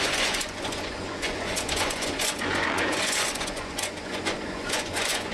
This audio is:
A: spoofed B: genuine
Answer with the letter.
A